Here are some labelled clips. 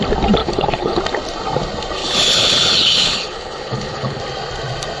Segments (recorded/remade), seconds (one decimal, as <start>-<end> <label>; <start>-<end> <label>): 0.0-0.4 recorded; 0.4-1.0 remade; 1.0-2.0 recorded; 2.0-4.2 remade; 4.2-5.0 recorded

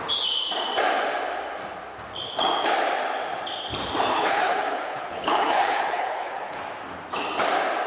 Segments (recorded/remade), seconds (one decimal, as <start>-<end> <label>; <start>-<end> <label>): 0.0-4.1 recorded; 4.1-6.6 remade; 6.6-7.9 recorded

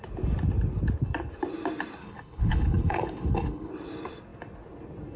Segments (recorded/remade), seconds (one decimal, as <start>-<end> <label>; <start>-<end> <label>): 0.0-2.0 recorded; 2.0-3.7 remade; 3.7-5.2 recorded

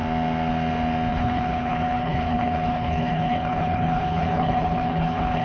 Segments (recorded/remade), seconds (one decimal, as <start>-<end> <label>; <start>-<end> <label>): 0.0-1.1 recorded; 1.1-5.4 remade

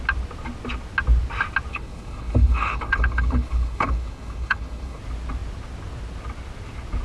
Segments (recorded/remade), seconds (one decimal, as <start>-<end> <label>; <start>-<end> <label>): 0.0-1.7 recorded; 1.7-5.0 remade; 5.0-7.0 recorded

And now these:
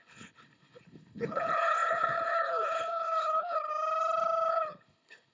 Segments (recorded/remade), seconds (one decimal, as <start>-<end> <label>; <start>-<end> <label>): 0.0-3.7 remade; 3.7-4.5 recorded; 4.5-5.3 remade

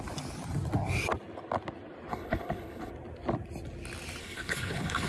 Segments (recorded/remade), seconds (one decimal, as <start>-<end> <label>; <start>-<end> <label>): 0.0-2.1 recorded; 2.1-2.9 remade; 2.9-4.2 recorded; 4.2-5.1 remade

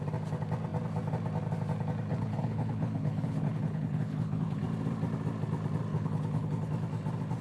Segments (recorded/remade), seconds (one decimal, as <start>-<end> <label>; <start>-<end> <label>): 0.0-2.1 recorded; 2.1-4.6 remade; 4.6-5.9 recorded; 5.9-6.7 remade; 6.7-7.4 recorded